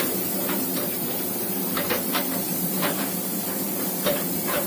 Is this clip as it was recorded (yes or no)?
no